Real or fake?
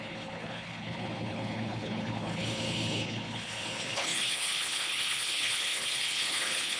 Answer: fake